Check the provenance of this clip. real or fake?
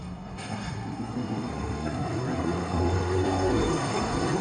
fake